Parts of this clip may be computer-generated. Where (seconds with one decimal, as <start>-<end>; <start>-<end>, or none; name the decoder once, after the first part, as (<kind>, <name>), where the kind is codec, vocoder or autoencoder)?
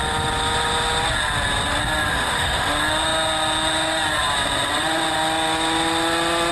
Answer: 2.1-2.7 (autoencoder, DAC-VAE)